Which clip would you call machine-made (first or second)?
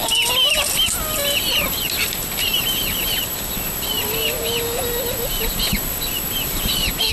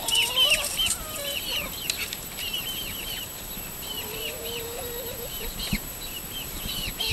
second